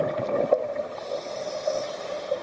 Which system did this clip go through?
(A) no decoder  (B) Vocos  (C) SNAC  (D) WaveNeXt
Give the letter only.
A